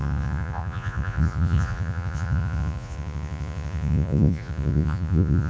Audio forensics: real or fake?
fake